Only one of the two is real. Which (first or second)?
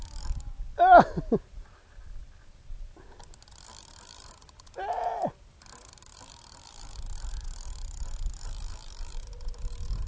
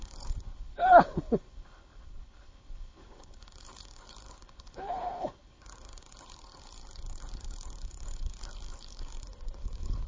first